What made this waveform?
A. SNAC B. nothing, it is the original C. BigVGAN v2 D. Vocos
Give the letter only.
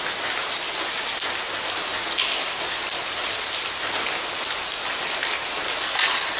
B